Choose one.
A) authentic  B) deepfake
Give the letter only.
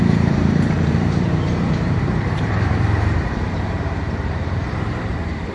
B